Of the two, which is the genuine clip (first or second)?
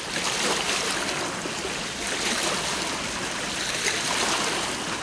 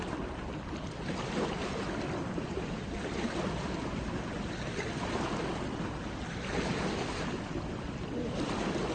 first